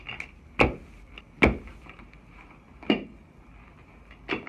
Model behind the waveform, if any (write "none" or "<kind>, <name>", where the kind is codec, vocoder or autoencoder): none